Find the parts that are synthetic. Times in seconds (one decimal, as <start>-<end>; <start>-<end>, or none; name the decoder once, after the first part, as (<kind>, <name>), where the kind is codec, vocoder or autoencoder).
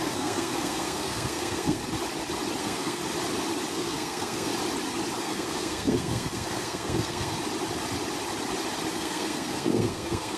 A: 0.0-1.8 (codec, SNAC); 2.6-3.0; 3.7-4.5; 5.2-7.4; 8.9-10.4